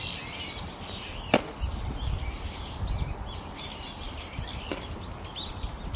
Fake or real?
real